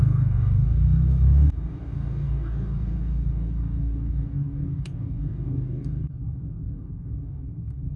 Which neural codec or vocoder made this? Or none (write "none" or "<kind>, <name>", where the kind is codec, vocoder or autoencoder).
codec, DAC